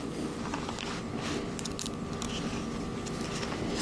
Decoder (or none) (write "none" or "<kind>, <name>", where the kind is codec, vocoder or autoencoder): none